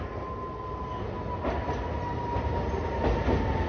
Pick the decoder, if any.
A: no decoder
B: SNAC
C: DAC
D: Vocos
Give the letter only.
A